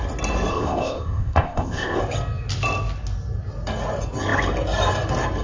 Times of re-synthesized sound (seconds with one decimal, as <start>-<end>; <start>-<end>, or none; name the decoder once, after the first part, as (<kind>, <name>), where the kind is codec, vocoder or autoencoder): 0.5-2.0 (codec, ZipCodec)

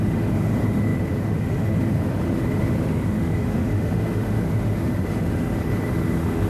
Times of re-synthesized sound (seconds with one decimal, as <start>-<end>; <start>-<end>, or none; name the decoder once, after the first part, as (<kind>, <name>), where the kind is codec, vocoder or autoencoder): 0.0-6.5 (autoencoder, DAC-VAE)